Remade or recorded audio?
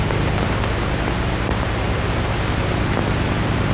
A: remade